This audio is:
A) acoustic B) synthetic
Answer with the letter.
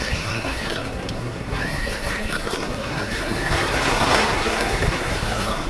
B